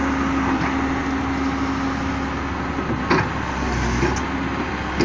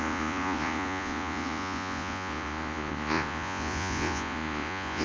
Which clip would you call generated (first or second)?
second